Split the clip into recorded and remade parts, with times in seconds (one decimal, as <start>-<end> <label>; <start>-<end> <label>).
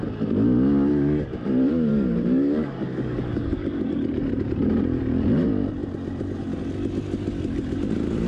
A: 0.0-0.9 recorded; 0.9-1.5 remade; 1.5-1.9 recorded; 1.9-4.3 remade; 4.3-8.3 recorded